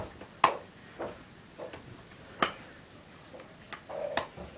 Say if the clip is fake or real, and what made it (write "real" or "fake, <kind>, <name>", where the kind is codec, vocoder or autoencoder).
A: real